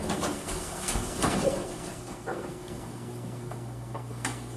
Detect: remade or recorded remade